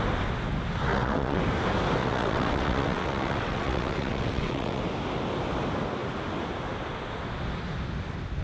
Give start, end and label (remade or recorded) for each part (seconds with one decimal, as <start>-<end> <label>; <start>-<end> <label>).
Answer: 0.0-0.9 recorded; 0.9-1.4 remade; 1.4-2.0 recorded; 2.0-4.8 remade; 4.8-8.4 recorded